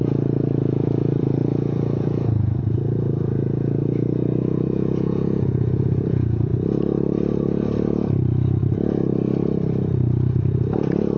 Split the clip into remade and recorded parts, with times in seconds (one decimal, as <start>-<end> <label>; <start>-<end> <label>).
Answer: 0.0-6.5 remade; 6.5-11.2 recorded